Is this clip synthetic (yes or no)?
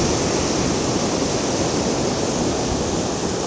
no